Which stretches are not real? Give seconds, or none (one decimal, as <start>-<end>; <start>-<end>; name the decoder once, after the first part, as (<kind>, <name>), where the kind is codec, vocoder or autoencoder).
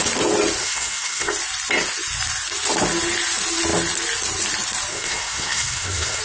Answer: 0.6-1.3 (codec, SNAC); 4.9-6.2